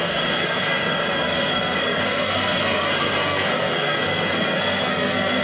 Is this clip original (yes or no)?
no